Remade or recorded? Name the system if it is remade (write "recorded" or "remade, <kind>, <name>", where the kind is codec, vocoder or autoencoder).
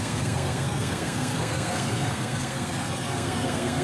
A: remade, codec, SNAC